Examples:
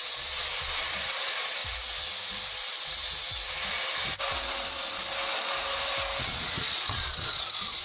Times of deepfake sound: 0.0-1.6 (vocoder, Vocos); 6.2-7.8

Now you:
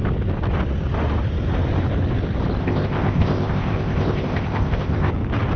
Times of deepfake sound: 2.6-5.1 (codec, ZipCodec)

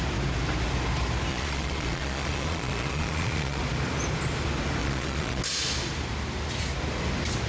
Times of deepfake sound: 1.3-3.6 (vocoder, Vocos); 4.8-5.4